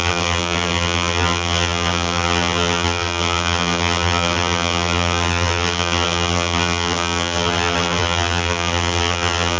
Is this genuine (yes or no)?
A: no